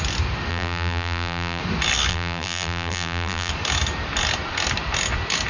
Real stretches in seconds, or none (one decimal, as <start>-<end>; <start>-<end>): 0.0-0.5; 1.6-2.1; 3.5-5.5